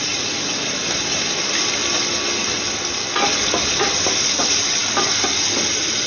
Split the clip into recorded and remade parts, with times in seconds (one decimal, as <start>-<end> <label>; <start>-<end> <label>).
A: 0.0-6.1 recorded